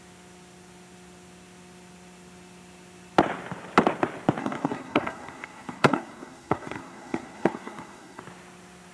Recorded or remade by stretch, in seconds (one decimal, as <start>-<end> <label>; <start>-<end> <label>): 0.0-4.4 recorded; 4.4-8.2 remade; 8.2-8.9 recorded